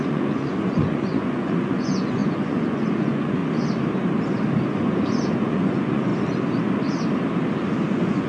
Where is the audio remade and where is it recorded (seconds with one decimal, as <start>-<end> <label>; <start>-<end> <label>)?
0.0-3.4 remade; 3.4-5.4 recorded; 5.4-6.1 remade; 6.1-7.9 recorded; 7.9-8.3 remade